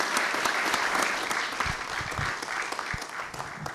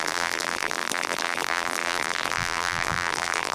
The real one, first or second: first